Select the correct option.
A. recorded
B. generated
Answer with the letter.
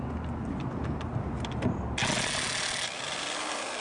A